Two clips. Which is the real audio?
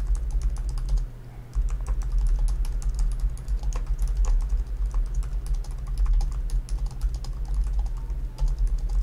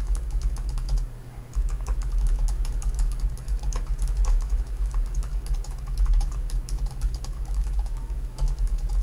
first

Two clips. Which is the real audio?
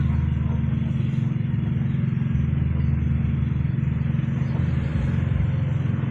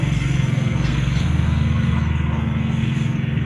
first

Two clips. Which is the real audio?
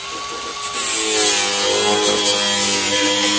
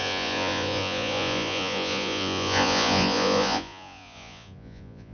first